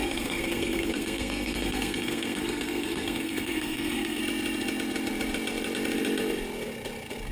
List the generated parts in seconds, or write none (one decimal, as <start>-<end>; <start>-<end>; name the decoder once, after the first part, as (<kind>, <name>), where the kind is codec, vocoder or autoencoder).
0.0-4.2 (codec, SNAC)